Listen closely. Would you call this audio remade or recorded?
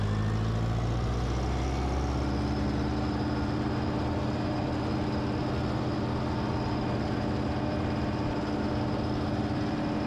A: recorded